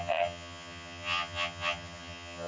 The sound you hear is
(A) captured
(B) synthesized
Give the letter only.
B